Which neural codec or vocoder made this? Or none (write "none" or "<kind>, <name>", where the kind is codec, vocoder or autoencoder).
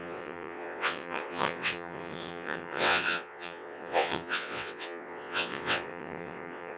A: vocoder, WaveNeXt